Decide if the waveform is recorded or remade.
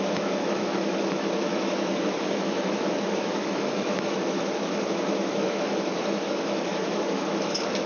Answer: remade